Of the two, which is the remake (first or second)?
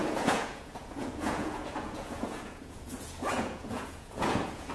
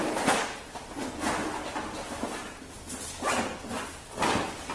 first